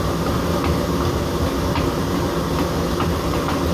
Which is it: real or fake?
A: real